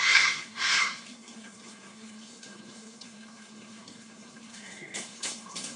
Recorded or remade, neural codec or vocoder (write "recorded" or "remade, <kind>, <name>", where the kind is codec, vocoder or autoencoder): remade, codec, SNAC